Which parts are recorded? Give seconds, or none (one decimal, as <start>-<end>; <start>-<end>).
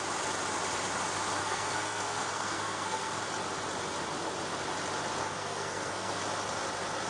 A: 0.0-1.4; 3.2-5.2; 6.2-7.1